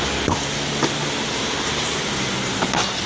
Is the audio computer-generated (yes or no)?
no